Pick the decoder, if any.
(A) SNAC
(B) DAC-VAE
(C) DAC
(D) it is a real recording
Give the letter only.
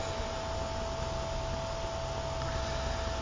D